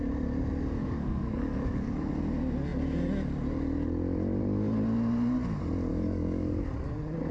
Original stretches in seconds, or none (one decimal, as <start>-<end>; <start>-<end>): 0.0-0.8; 2.1-5.9; 6.6-7.3